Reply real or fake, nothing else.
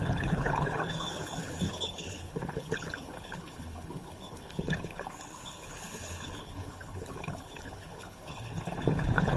fake